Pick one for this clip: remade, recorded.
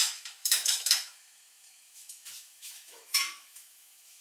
remade